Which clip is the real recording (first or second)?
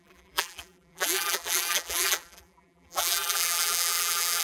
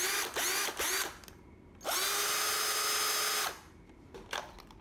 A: second